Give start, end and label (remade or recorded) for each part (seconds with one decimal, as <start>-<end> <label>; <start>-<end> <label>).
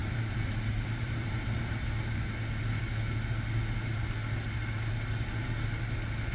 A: 0.0-1.7 remade; 1.7-6.3 recorded